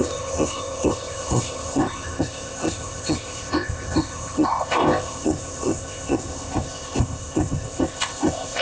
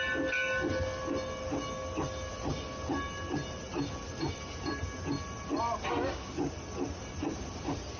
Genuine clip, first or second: second